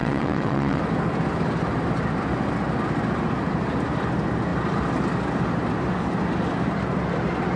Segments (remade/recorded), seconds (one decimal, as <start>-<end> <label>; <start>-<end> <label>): 0.0-0.8 remade; 0.8-7.6 recorded